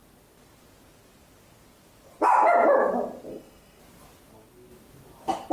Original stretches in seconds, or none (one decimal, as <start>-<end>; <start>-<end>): 0.0-3.3; 3.8-5.5